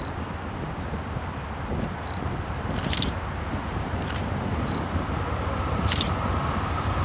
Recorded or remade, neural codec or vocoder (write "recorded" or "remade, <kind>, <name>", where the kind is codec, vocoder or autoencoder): recorded